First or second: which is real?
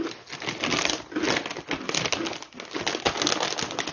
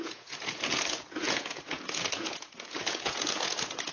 first